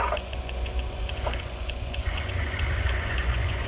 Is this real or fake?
fake